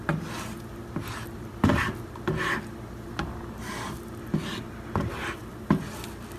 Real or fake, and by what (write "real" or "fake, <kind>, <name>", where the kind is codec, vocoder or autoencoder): real